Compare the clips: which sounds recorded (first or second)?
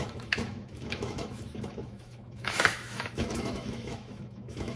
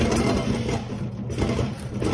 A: second